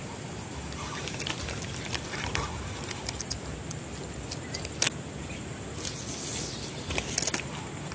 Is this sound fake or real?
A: real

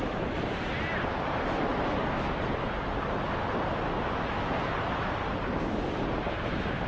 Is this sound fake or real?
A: real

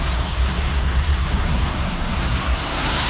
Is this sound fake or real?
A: fake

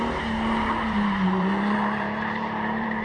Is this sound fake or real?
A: fake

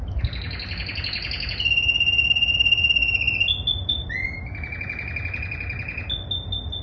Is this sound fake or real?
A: real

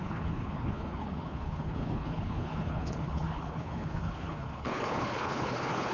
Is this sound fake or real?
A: fake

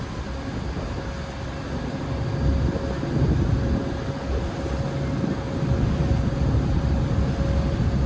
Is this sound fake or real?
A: real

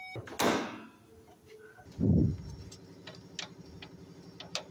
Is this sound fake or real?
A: real